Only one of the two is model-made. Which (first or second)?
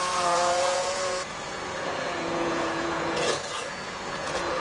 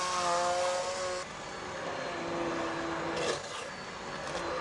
first